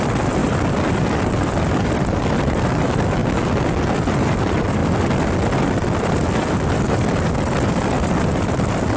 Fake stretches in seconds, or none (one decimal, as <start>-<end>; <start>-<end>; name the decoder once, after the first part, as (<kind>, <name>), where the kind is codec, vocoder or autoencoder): 0.0-3.2 (vocoder, BigVGAN v2); 4.1-4.8; 5.7-9.0